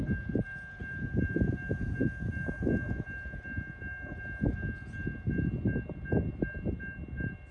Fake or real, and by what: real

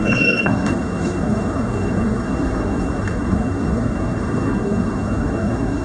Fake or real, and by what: fake, codec, SNAC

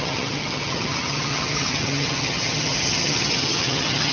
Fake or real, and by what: fake, vocoder, HiFi-GAN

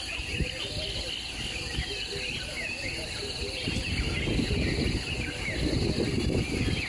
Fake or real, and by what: real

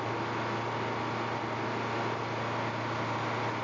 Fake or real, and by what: real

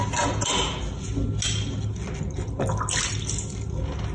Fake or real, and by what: real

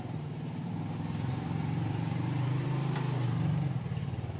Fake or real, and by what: fake, vocoder, BigVGAN v2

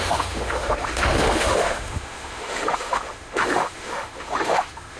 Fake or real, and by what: fake, autoencoder, DAC-VAE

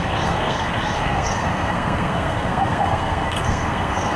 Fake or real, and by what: fake, codec, SNAC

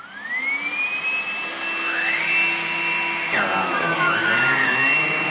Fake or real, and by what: real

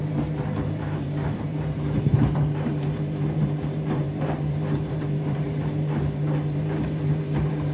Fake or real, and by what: fake, vocoder, BigVGAN v2